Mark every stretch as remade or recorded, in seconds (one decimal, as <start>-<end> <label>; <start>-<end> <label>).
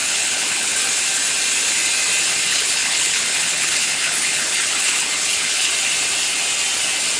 0.0-0.8 remade; 0.8-2.5 recorded; 2.5-5.7 remade; 5.7-7.2 recorded